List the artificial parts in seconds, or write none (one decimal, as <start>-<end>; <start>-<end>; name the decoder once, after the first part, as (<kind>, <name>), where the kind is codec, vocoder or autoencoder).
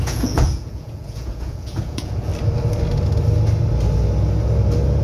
0.0-2.3 (vocoder, Vocos)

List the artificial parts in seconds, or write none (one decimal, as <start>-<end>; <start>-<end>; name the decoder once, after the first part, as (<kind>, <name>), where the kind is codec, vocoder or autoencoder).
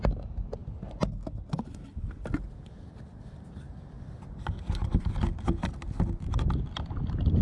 none